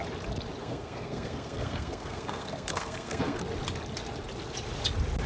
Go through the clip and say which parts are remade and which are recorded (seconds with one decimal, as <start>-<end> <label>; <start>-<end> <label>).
0.0-0.6 recorded; 0.6-3.4 remade; 3.4-5.3 recorded